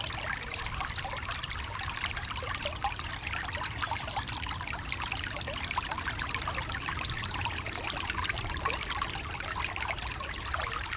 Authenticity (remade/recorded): remade